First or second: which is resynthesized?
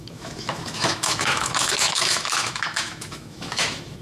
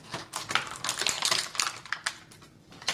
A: first